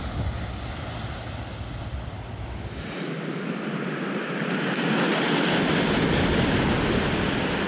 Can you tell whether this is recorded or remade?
recorded